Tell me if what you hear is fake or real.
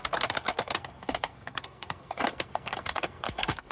fake